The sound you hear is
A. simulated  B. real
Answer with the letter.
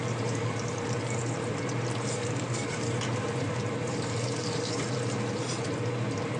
A